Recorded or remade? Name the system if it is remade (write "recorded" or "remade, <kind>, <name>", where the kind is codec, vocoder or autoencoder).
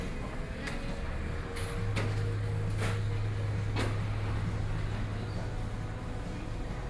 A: recorded